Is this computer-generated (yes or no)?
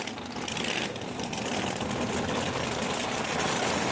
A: no